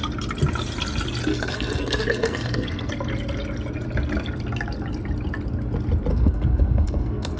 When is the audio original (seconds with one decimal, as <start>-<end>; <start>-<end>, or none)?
0.0-1.3; 2.9-6.1